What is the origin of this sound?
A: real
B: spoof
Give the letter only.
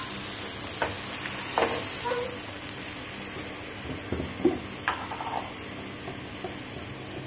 A